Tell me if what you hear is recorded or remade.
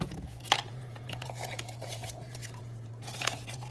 remade